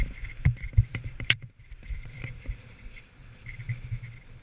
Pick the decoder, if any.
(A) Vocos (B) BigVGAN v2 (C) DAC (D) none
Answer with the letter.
B